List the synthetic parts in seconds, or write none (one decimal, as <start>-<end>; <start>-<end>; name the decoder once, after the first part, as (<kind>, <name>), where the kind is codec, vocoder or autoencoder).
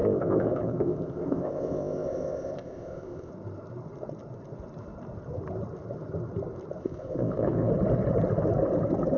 0.0-3.3 (codec, ZipCodec); 6.8-7.7